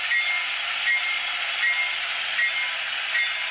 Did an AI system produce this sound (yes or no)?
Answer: no